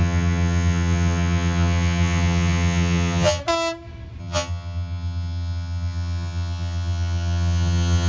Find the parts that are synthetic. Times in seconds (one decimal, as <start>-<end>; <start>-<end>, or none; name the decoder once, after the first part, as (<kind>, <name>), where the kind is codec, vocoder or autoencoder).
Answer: 0.0-3.4 (vocoder, HiFi-GAN); 4.2-8.1